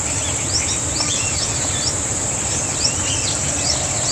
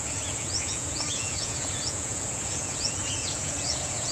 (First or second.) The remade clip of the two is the second